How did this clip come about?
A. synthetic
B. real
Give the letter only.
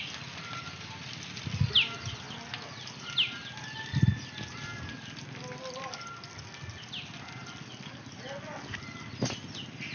B